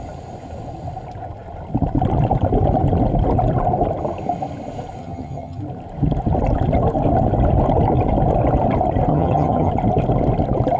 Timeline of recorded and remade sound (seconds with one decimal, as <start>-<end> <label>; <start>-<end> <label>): 0.0-5.0 recorded; 5.0-5.6 remade; 5.6-9.1 recorded; 9.1-9.7 remade; 9.7-10.8 recorded